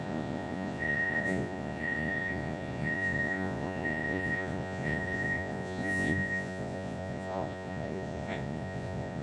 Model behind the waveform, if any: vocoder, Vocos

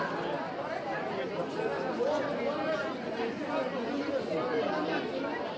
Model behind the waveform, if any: none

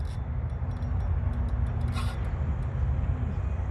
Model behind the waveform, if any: none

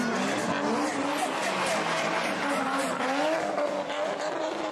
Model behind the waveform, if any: none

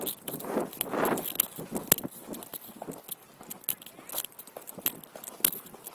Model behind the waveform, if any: none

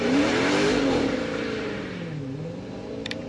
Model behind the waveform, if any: vocoder, BigVGAN v2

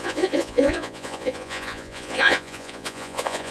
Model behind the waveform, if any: vocoder, Vocos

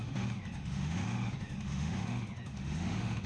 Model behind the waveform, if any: autoencoder, DAC-VAE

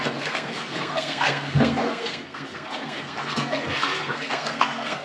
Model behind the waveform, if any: codec, SNAC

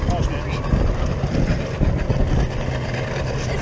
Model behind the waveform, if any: none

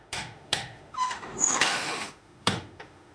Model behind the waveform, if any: autoencoder, DAC-VAE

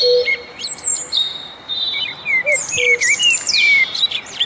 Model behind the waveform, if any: vocoder, BigVGAN v2